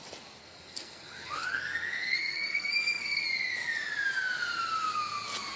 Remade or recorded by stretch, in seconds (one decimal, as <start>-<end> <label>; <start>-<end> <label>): 0.0-0.4 recorded; 0.4-3.2 remade; 3.2-5.6 recorded